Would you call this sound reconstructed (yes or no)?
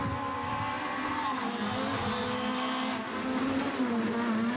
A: no